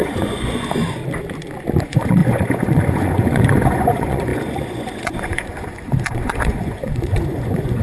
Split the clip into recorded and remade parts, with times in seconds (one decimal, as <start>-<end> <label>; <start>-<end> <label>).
0.0-1.0 remade; 1.0-1.8 recorded; 1.8-7.8 remade